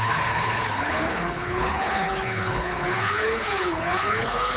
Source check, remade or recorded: remade